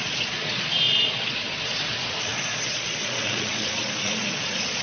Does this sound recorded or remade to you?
remade